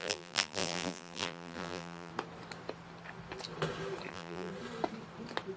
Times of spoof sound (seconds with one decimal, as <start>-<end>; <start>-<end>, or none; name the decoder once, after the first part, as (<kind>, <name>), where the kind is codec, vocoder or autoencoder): 0.0-2.1 (vocoder, BigVGAN v2); 4.1-4.5